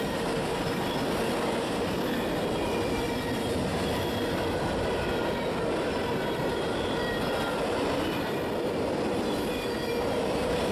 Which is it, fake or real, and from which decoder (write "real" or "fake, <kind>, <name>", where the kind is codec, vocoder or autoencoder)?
real